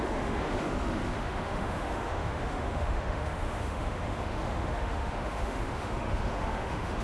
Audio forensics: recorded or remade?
remade